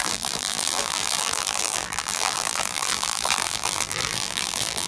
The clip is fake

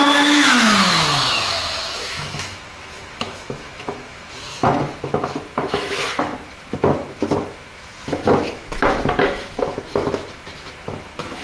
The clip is fake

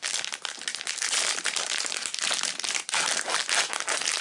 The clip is real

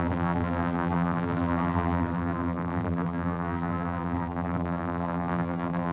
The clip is fake